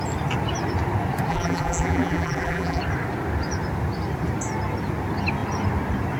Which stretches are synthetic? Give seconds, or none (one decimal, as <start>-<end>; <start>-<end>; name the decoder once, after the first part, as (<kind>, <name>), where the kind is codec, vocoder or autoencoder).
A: 1.3-2.8 (vocoder, BigVGAN v2)